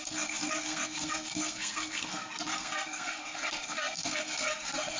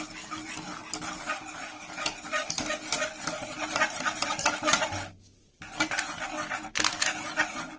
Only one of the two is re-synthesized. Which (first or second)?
first